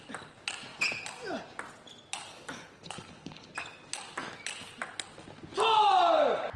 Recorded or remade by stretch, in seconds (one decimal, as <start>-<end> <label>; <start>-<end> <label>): 0.0-2.3 recorded; 2.3-3.5 remade; 3.5-6.6 recorded